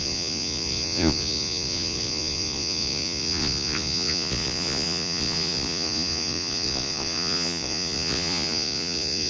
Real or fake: fake